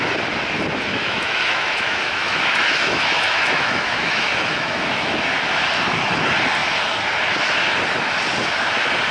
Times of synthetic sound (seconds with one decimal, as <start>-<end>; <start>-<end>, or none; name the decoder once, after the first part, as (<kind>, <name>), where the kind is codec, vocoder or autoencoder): 1.0-5.2 (autoencoder, DAC-VAE)